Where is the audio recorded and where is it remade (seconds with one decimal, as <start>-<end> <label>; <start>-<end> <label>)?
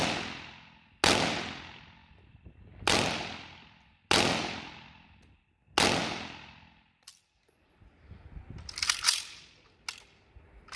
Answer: 0.0-10.8 recorded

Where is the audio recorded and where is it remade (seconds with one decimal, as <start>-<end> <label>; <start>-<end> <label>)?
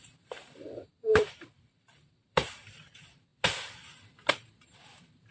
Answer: 0.0-3.3 remade; 3.3-4.3 recorded; 4.3-5.3 remade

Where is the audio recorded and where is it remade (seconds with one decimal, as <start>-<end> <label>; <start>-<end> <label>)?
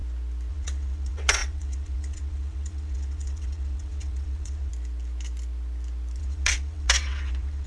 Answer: 0.0-0.5 recorded; 0.5-4.7 remade; 4.7-6.2 recorded; 6.2-7.7 remade